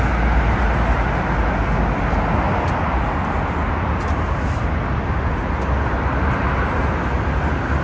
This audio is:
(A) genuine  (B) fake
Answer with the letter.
A